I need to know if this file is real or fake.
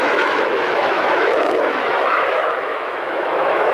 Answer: fake